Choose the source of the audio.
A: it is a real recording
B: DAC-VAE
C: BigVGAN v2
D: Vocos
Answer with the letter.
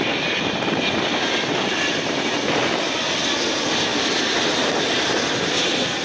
A